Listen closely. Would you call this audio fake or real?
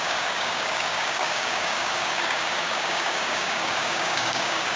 fake